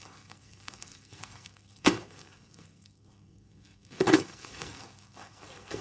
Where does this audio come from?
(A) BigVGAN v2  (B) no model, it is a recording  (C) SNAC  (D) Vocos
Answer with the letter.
C